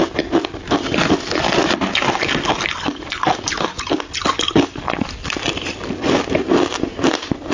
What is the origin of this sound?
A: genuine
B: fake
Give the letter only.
A